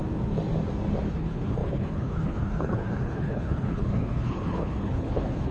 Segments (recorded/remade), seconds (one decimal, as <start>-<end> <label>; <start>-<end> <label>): 0.0-1.1 recorded; 1.1-5.5 remade